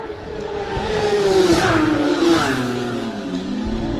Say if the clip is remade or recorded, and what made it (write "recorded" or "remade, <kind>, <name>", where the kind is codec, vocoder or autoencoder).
remade, codec, DAC